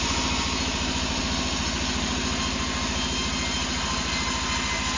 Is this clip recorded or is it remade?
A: recorded